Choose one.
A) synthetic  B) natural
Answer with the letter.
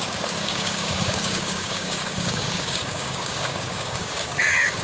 A